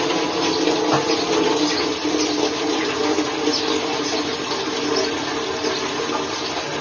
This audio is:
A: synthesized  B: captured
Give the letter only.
B